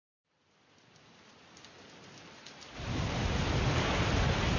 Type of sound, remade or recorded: recorded